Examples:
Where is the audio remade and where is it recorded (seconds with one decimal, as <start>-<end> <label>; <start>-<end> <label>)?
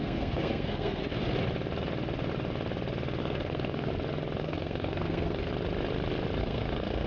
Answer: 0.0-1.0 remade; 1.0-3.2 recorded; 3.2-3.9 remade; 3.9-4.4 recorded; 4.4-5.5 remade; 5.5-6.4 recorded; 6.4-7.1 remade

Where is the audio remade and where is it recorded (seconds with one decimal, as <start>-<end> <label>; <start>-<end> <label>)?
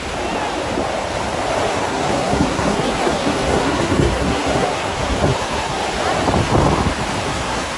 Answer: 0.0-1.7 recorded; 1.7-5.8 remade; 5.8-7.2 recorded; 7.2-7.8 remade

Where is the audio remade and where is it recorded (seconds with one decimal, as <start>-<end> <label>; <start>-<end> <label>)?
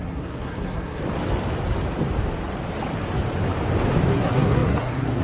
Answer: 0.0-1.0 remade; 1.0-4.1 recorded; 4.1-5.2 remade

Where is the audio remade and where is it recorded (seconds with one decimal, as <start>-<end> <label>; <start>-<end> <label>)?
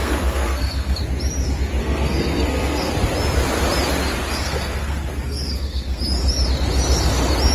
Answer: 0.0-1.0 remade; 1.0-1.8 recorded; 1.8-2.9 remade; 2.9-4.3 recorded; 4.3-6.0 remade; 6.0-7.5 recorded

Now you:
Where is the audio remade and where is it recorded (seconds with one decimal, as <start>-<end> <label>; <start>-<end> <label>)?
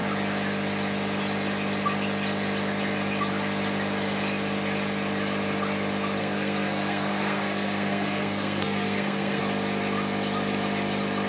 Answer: 0.0-6.2 recorded; 6.2-9.4 remade; 9.4-11.3 recorded